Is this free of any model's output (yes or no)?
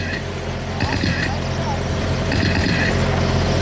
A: yes